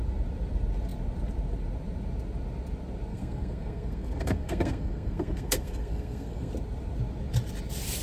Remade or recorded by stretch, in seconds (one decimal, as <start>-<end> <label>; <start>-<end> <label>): 0.0-3.1 recorded; 3.1-6.5 remade; 6.5-8.0 recorded